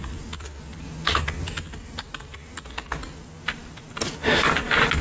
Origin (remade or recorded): recorded